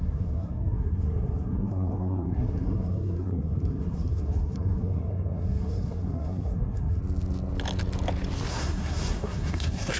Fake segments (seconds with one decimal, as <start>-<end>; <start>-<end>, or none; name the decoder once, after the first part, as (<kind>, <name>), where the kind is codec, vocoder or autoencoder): 0.0-7.0 (codec, SNAC); 8.5-10.0